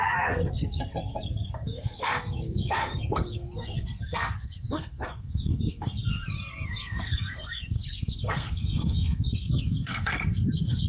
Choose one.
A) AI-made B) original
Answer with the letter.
A